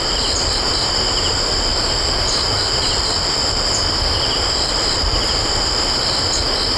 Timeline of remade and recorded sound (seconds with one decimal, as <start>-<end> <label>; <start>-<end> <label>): 0.0-6.8 recorded